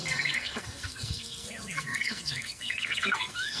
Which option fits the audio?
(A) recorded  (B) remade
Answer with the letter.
B